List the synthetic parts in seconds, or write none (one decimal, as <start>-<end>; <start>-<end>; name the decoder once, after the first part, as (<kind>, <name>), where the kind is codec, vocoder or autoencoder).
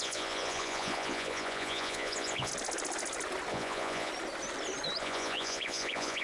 0.0-2.5 (vocoder, Vocos); 3.5-4.1; 5.0-6.2